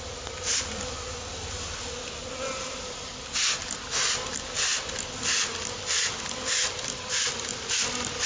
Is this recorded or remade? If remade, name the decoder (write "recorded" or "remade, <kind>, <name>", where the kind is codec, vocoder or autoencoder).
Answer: recorded